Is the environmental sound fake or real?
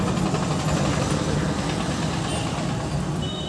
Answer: real